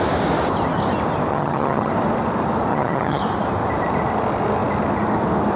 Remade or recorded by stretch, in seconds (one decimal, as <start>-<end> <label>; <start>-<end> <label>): 0.0-1.3 recorded; 1.3-1.9 remade; 1.9-2.7 recorded; 2.7-3.2 remade; 3.2-5.6 recorded